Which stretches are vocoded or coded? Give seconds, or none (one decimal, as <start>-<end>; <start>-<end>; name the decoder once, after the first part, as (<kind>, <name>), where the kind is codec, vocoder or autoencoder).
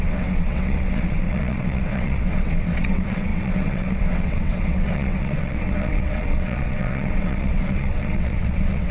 0.0-8.9 (vocoder, WaveNeXt)